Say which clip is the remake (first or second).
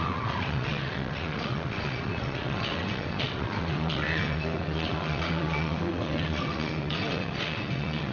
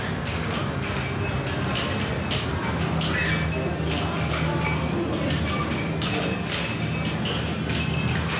first